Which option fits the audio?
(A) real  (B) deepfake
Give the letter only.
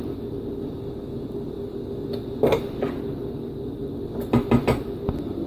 A